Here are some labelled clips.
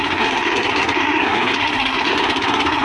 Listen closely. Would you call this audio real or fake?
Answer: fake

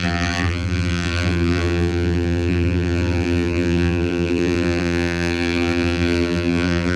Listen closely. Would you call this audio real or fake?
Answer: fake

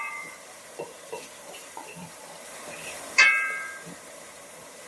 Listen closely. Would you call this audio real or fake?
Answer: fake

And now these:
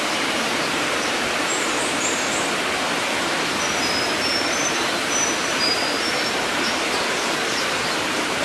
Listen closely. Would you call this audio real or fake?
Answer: fake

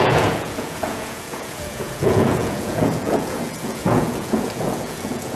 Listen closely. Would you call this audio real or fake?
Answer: fake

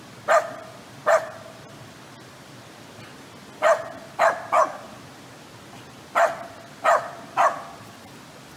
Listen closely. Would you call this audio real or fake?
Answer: real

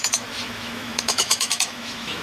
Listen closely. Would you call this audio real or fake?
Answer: fake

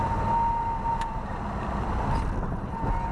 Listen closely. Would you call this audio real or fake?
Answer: real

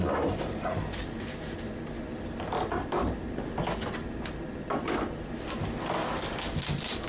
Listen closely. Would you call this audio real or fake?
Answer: real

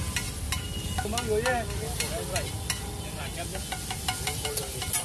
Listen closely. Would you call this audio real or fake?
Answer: real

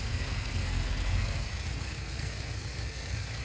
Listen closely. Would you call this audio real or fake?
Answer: fake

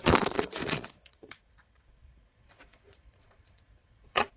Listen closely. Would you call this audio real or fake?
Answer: fake